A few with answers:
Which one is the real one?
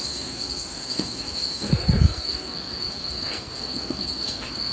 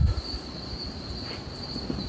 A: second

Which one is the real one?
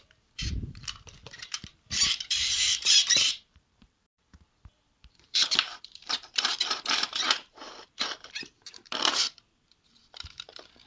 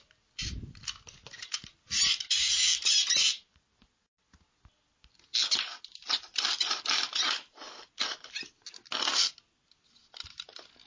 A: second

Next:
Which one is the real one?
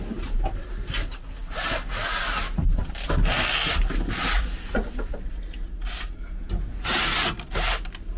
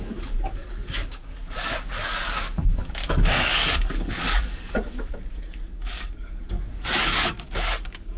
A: first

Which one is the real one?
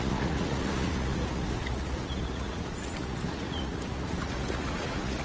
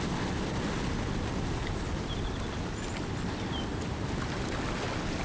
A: second